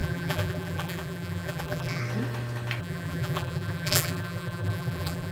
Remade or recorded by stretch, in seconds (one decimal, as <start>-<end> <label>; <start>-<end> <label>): 0.0-2.0 remade; 2.0-2.8 recorded; 2.8-5.3 remade